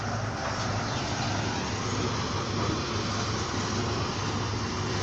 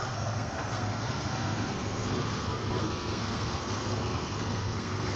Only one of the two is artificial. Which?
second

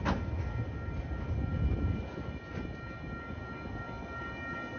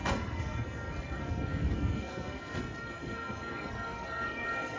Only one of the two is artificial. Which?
second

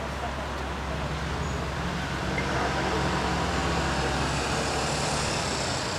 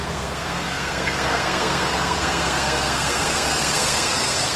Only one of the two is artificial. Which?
second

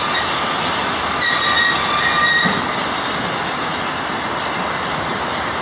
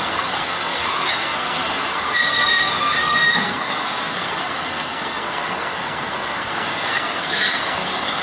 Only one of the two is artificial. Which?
second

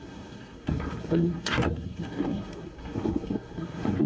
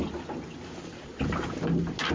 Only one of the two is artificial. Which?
first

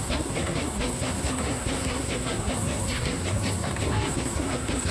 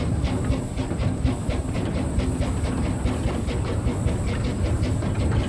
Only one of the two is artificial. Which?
first